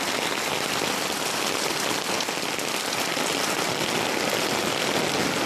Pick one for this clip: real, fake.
real